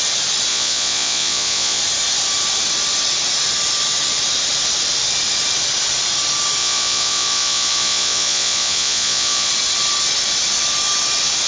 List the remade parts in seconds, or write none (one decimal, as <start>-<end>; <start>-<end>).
0.5-1.8; 6.6-9.5